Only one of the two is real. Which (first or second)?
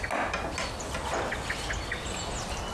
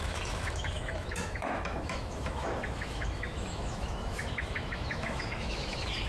first